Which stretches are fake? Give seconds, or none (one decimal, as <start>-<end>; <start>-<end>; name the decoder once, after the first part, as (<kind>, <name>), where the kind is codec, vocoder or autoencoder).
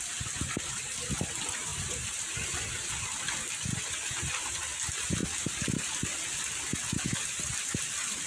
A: 1.7-2.5 (vocoder, BigVGAN v2)